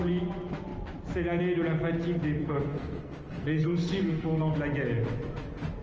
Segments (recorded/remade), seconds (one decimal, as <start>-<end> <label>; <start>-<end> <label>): 0.0-2.4 recorded; 2.4-4.4 remade; 4.4-5.8 recorded